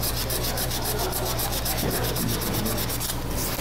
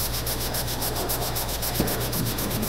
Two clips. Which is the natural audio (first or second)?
first